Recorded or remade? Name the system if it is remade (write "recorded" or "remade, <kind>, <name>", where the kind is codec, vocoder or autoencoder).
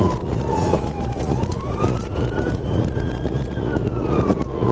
remade, vocoder, Vocos